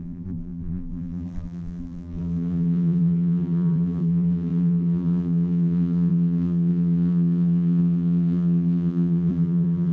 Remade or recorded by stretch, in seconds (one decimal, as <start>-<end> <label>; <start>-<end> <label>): 0.0-9.9 remade